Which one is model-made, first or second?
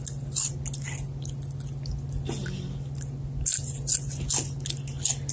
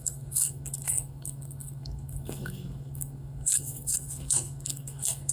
second